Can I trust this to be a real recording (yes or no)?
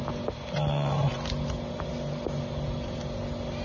yes